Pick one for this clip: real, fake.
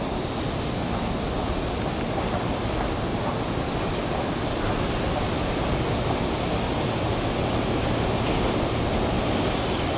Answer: real